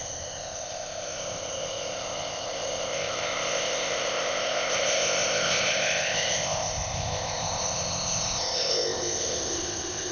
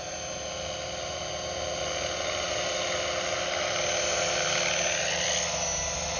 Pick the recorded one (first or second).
second